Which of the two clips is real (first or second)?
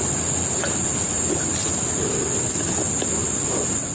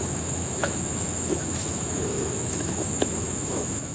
first